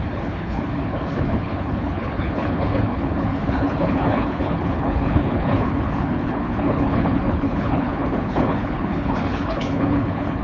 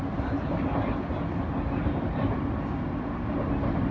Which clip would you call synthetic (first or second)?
first